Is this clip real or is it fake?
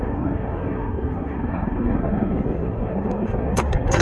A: fake